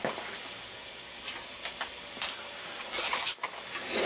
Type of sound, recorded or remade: recorded